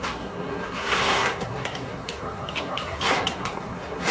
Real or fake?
fake